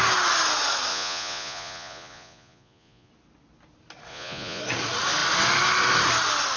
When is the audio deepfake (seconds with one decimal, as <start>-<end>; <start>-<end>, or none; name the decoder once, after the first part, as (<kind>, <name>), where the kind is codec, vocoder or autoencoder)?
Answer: 0.9-3.1 (vocoder, Vocos); 4.1-4.6